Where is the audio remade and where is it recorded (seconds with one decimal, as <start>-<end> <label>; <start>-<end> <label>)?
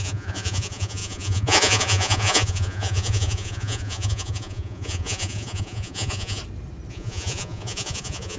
0.0-6.4 remade; 6.4-6.9 recorded; 6.9-8.4 remade